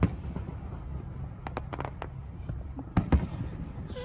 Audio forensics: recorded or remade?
recorded